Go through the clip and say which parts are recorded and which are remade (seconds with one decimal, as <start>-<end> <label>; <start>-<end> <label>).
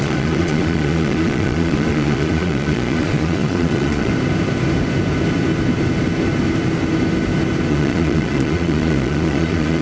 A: 0.0-4.1 remade; 4.1-7.7 recorded; 7.7-9.8 remade